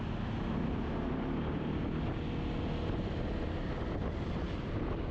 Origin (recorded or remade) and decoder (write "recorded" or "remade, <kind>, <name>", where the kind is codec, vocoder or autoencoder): recorded